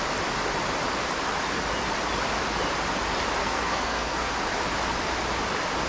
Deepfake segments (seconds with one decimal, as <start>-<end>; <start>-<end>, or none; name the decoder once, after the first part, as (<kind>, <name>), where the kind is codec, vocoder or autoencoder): 3.4-4.3 (codec, SNAC)